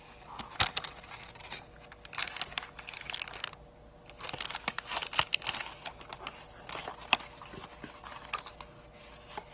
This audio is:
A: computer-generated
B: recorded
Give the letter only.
B